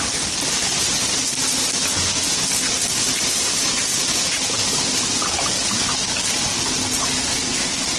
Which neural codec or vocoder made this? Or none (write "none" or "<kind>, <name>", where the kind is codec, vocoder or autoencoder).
none